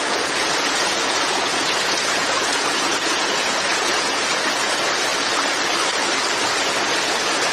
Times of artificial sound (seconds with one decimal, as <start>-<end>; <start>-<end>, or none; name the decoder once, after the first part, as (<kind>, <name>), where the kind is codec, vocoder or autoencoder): 0.0-5.1 (vocoder, Vocos); 7.1-7.5